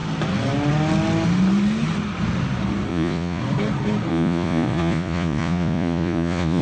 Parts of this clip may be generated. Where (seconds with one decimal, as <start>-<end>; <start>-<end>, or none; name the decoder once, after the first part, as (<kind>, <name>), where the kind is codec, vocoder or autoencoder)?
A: 2.9-3.4 (vocoder, Vocos); 4.1-6.6